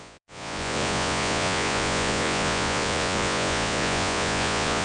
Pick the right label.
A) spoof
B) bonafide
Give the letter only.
A